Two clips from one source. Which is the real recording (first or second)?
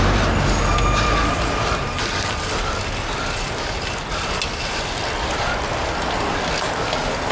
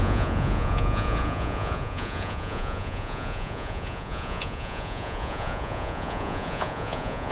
first